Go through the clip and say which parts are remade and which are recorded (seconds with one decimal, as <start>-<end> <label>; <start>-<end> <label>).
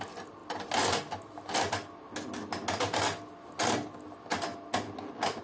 0.0-5.4 recorded